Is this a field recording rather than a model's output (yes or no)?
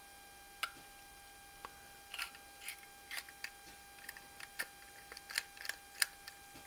yes